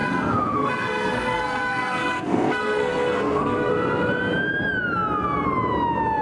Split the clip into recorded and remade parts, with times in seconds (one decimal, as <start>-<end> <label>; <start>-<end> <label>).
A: 0.0-3.7 remade; 3.7-6.2 recorded

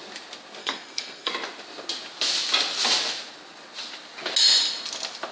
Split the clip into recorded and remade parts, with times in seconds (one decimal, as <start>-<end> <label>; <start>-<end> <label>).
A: 0.0-0.6 recorded; 0.6-1.3 remade; 1.3-5.3 recorded

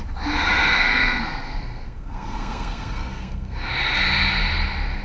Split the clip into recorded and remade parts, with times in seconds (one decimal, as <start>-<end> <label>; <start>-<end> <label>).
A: 0.0-0.7 recorded; 0.7-3.7 remade; 3.7-5.0 recorded

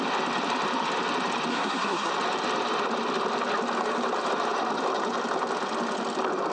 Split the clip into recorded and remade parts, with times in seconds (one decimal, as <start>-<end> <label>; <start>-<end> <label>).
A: 0.0-1.5 recorded; 1.5-2.1 remade; 2.1-6.5 recorded

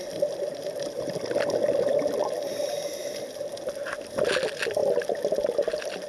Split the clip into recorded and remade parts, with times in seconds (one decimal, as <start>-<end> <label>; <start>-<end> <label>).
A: 0.0-6.1 recorded

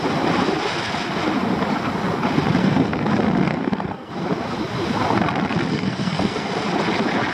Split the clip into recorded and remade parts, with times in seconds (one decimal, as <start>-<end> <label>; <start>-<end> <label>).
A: 0.0-2.6 recorded; 2.6-3.1 remade; 3.1-3.5 recorded; 3.5-4.1 remade; 4.1-5.7 recorded; 5.7-6.5 remade; 6.5-7.3 recorded

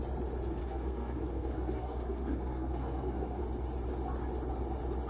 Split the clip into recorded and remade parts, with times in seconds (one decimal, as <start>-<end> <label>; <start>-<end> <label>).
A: 0.0-0.6 recorded; 0.6-3.4 remade; 3.4-5.1 recorded